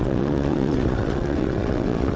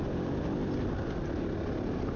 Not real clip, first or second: first